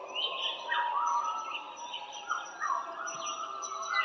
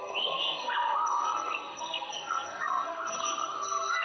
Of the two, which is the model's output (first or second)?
second